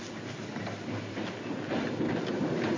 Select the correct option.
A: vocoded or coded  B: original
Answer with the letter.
A